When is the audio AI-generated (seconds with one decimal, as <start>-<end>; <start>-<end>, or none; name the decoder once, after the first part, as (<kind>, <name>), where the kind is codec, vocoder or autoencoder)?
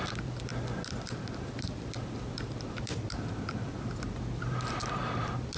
0.0-0.5 (vocoder, BigVGAN v2); 1.0-5.6